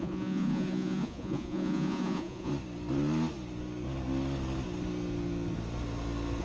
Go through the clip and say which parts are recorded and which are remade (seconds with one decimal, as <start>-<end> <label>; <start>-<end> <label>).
0.0-2.5 remade; 2.5-6.4 recorded

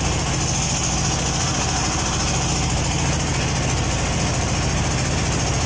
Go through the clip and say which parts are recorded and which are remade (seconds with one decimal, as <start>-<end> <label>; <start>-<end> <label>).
0.0-5.7 recorded

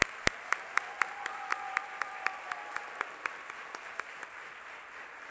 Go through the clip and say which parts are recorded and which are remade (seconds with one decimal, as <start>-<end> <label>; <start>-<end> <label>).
0.0-5.3 recorded

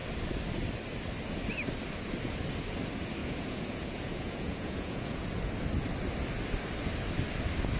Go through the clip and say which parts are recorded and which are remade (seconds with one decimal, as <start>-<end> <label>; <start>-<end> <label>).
0.0-3.2 recorded; 3.2-5.5 remade; 5.5-7.8 recorded

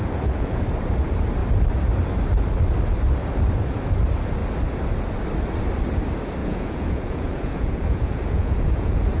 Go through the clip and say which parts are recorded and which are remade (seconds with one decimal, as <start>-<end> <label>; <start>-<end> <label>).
0.0-0.6 remade; 0.6-6.4 recorded; 6.4-9.2 remade

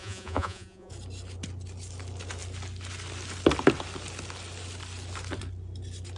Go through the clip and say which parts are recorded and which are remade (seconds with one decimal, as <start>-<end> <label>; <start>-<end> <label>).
0.0-0.9 remade; 0.9-6.2 recorded

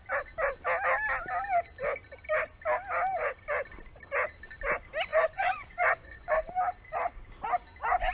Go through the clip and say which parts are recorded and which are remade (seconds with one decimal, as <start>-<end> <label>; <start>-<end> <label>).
0.0-5.1 recorded; 5.1-6.4 remade; 6.4-8.1 recorded

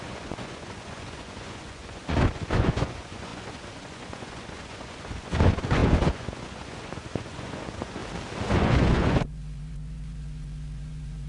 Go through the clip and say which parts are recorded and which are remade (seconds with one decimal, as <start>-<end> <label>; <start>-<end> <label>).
0.0-8.0 remade; 8.0-8.5 recorded; 8.5-11.3 remade